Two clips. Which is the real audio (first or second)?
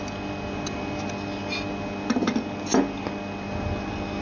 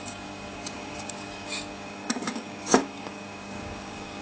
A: first